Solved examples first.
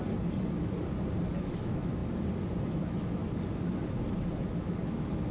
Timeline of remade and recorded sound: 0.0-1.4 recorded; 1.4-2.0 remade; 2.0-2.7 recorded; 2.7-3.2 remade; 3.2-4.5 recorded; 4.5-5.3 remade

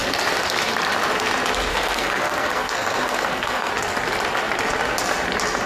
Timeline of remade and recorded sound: 0.0-1.7 recorded; 1.7-3.7 remade; 3.7-5.7 recorded

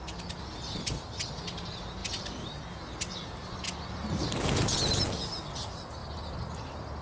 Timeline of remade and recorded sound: 0.0-7.0 recorded